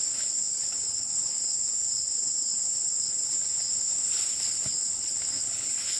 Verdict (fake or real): fake